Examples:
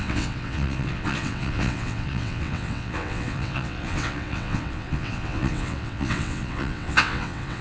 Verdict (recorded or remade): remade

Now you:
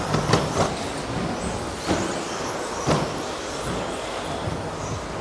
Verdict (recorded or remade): recorded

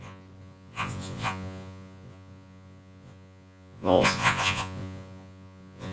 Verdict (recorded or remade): remade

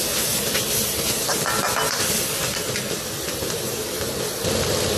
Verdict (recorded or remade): recorded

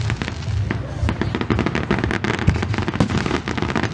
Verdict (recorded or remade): recorded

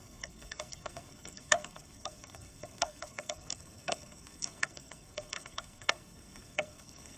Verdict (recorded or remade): remade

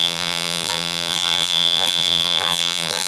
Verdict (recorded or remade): remade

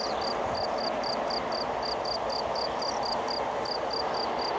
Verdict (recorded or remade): recorded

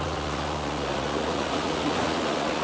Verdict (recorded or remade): remade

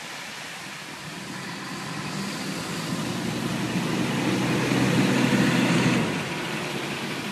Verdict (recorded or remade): recorded